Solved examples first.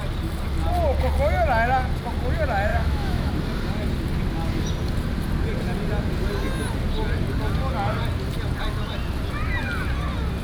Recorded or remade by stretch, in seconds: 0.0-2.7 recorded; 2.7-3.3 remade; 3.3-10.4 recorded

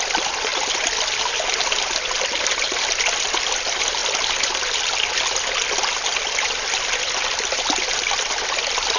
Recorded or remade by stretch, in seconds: 0.0-9.0 recorded

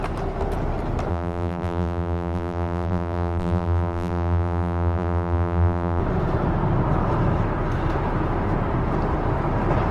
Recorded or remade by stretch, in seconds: 0.0-1.1 recorded; 1.1-6.0 remade; 6.0-9.9 recorded

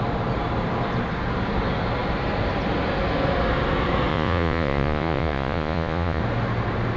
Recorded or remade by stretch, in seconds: 0.0-4.1 recorded; 4.1-6.2 remade; 6.2-7.0 recorded

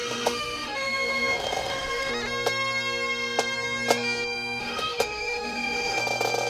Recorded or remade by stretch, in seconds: 0.0-2.1 remade; 2.1-4.6 recorded; 4.6-6.0 remade; 6.0-6.5 recorded